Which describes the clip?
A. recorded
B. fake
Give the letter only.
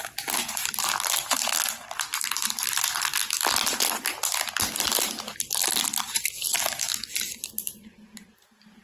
A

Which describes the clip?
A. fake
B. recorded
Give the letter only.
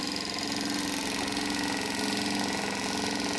B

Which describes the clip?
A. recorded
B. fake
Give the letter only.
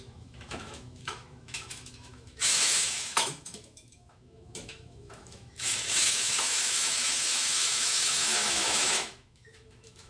B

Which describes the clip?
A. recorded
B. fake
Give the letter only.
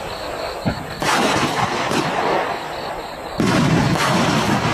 B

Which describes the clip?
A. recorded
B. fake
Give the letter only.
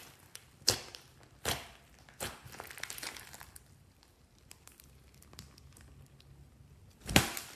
A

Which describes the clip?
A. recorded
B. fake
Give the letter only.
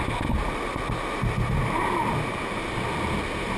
A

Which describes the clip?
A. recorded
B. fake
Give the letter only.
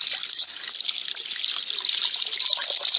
A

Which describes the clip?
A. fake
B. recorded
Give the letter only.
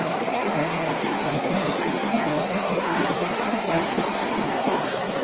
A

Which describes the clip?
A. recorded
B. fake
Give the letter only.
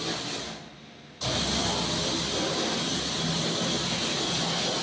A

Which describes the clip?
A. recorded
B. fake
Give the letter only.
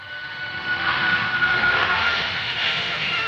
B